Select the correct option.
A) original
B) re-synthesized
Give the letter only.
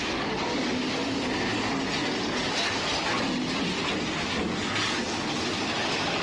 A